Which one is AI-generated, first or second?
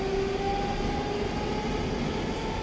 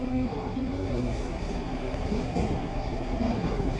second